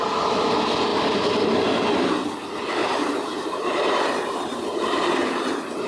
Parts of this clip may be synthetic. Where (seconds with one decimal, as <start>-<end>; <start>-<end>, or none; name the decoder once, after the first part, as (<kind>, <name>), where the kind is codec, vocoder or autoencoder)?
2.8-5.4 (vocoder, BigVGAN v2)